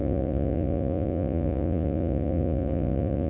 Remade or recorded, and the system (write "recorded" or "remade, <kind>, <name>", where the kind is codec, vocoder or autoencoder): remade, vocoder, Vocos